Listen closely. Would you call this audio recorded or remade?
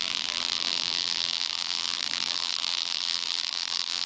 remade